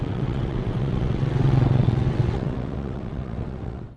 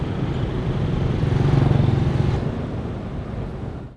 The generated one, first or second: first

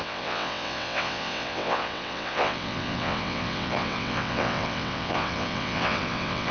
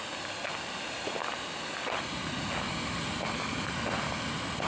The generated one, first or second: first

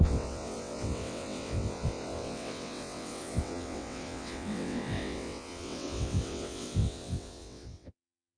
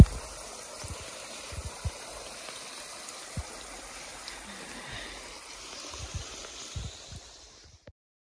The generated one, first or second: first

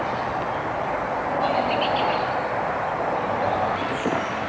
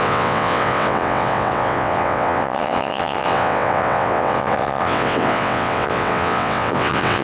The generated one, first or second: second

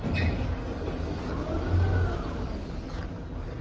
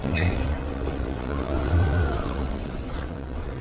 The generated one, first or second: second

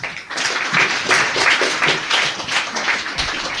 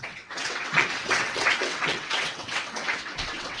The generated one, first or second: second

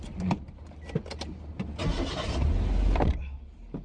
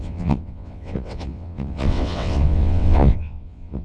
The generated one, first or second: second